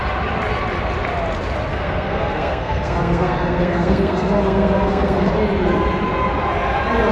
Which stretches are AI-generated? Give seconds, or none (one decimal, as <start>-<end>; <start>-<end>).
1.7-5.3